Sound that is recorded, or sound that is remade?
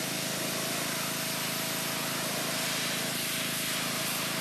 recorded